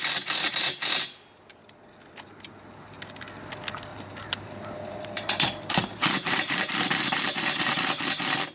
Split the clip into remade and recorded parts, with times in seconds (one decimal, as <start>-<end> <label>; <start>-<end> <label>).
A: 0.0-3.9 recorded; 3.9-8.1 remade; 8.1-8.5 recorded